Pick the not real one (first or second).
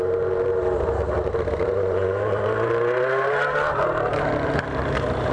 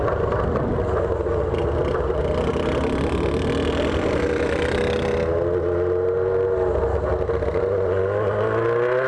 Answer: first